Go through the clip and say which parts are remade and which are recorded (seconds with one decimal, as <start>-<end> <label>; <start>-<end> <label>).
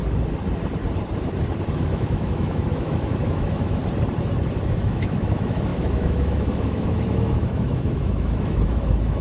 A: 0.0-1.7 recorded; 1.7-3.8 remade; 3.8-4.7 recorded; 4.7-9.2 remade